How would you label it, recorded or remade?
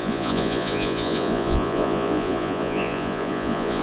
remade